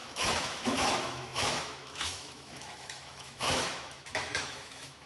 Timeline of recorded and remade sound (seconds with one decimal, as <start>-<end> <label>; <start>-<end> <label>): 0.0-5.1 remade